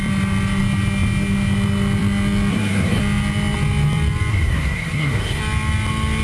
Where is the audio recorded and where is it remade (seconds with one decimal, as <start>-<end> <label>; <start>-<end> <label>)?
0.0-2.5 recorded; 2.5-3.0 remade; 3.0-4.3 recorded; 4.3-5.4 remade; 5.4-6.2 recorded